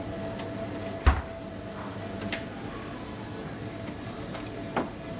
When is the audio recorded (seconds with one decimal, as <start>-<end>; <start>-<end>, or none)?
0.0-5.2